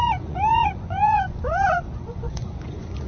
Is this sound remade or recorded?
remade